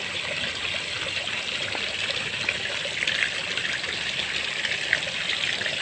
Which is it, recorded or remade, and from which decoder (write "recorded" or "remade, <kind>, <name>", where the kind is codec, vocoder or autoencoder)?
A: recorded